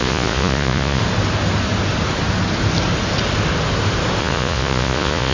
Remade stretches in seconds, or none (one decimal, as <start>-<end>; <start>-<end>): 0.0-1.0; 4.2-5.3